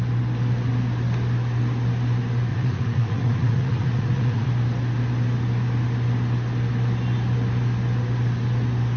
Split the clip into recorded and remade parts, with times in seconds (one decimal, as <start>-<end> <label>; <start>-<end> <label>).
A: 0.0-2.5 recorded; 2.5-4.5 remade; 4.5-9.0 recorded